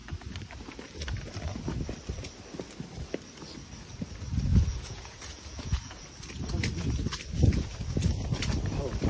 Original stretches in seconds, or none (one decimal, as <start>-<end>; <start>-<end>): 0.0-4.5; 6.1-9.1